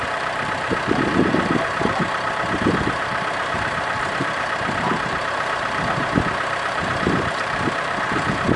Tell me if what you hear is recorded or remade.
remade